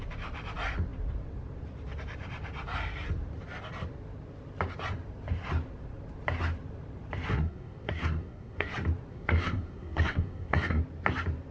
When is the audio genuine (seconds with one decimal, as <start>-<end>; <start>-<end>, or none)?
0.0-7.3; 8.7-9.1; 10.8-11.5